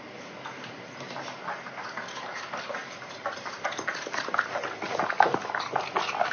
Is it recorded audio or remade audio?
recorded